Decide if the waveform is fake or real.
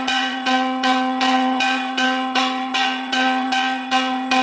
fake